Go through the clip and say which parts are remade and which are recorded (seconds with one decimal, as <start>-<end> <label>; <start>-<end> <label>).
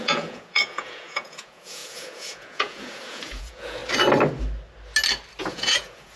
0.0-3.8 remade; 3.8-5.4 recorded; 5.4-6.2 remade